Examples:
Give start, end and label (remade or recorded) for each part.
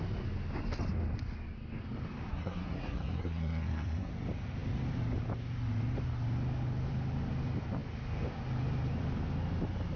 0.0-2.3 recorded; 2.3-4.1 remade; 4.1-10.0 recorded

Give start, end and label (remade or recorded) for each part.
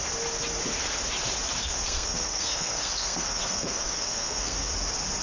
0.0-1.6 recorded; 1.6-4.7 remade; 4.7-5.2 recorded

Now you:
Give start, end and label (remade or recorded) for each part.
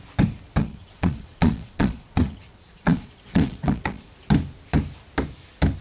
0.0-0.6 recorded; 0.6-4.1 remade; 4.1-5.8 recorded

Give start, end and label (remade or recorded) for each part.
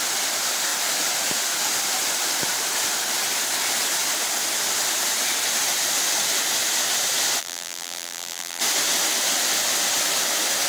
0.0-7.4 recorded; 7.4-8.6 remade; 8.6-10.7 recorded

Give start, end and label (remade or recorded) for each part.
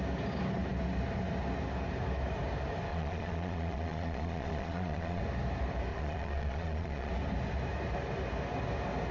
0.0-2.9 recorded; 2.9-5.2 remade; 5.2-5.9 recorded; 5.9-7.1 remade; 7.1-9.1 recorded